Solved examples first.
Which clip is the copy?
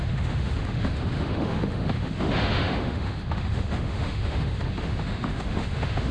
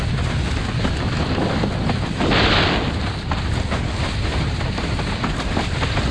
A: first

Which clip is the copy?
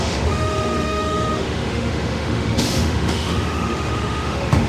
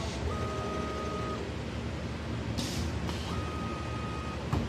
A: first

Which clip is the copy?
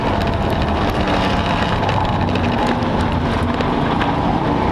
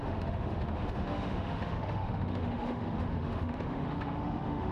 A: second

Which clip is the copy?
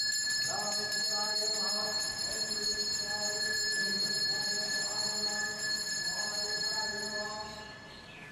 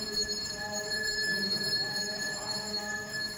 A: second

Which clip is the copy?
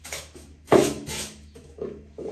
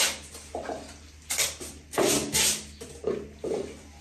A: first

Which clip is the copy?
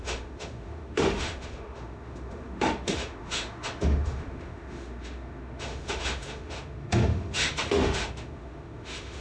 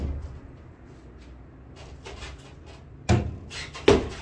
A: first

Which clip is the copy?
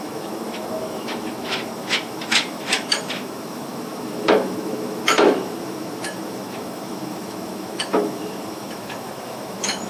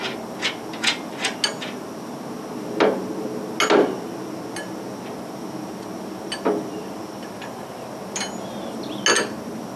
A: first